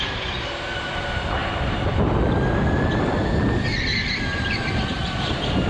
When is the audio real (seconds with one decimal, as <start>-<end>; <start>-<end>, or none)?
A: 0.0-5.7